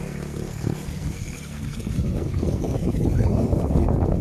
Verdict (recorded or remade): remade